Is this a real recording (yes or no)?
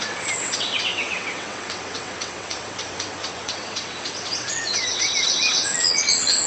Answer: no